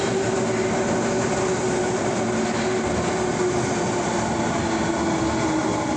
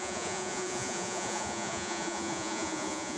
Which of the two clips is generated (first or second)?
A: second